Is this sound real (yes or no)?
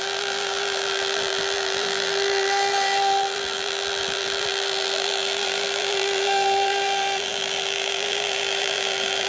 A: no